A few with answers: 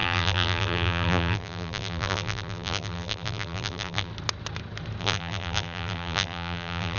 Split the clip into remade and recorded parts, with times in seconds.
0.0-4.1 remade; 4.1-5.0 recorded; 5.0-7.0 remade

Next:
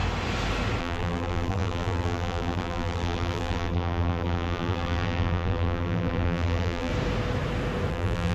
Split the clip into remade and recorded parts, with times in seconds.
0.0-0.8 recorded; 0.8-6.9 remade; 6.9-7.9 recorded; 7.9-8.3 remade

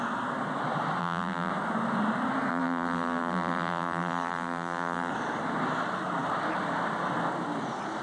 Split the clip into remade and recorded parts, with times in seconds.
0.0-1.0 recorded; 1.0-1.5 remade; 1.5-2.5 recorded; 2.5-5.1 remade; 5.1-8.0 recorded

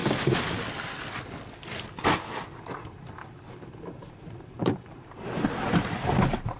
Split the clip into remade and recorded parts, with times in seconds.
0.0-4.0 recorded; 4.0-6.6 remade